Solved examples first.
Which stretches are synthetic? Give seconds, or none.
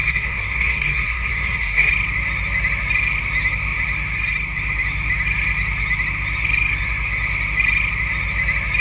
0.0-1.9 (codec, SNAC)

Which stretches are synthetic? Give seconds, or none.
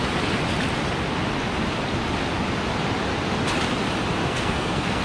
4.2-5.0 (codec, SNAC)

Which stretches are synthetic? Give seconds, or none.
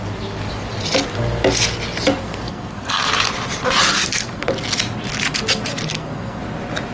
2.2-3.1 (codec, SNAC); 3.9-4.5; 5.7-6.4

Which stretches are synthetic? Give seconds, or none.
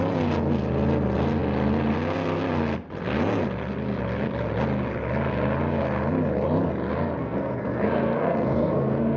7.2-9.2 (codec, SNAC)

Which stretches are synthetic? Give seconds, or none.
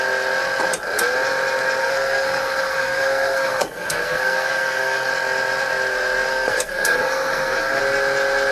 1.8-5.1 (codec, SNAC); 6.3-7.8